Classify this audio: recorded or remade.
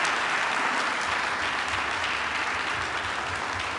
recorded